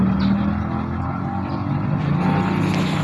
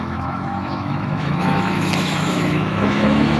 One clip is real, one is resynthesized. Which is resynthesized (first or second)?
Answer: second